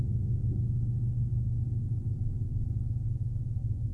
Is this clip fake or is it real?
real